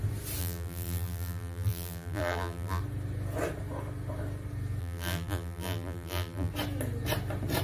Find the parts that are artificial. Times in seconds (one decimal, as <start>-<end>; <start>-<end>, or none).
0.4-2.8; 4.8-6.5